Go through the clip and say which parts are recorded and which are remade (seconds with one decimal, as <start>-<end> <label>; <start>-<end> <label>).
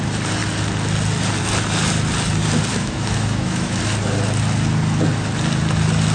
0.0-2.7 recorded; 2.7-3.8 remade; 3.8-6.1 recorded